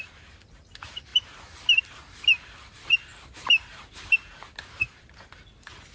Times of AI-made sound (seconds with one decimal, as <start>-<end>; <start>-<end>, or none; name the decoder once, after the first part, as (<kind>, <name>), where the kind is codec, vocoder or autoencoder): none